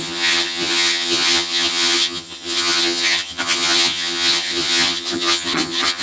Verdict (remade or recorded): remade